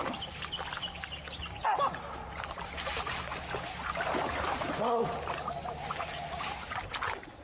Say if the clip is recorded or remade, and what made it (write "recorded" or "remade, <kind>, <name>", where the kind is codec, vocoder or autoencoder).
recorded